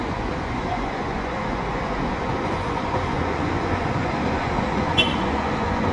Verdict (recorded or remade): remade